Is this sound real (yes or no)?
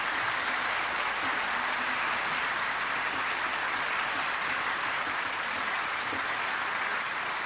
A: no